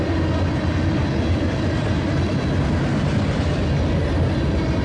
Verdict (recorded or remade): recorded